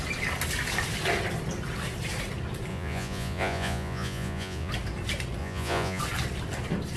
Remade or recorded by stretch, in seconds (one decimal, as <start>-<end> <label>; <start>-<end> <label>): 0.0-2.7 recorded; 2.7-4.7 remade; 4.7-5.4 recorded; 5.4-6.0 remade; 6.0-7.0 recorded